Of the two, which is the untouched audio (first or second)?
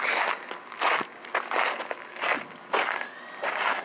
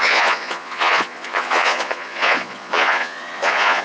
first